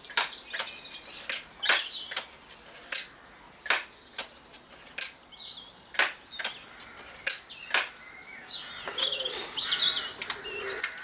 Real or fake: real